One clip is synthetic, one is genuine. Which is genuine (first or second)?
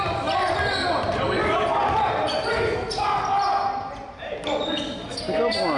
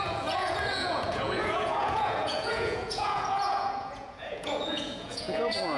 first